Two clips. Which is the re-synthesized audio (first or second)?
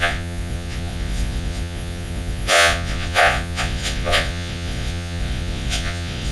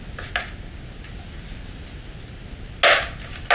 first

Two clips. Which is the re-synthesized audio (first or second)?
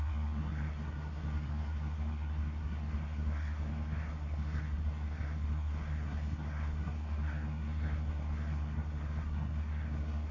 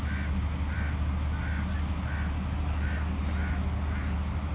first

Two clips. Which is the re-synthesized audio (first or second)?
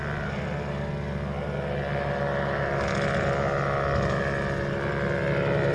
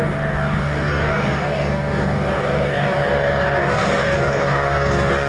second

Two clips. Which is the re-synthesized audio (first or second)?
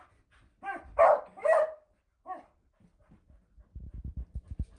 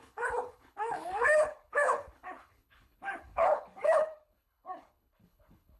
second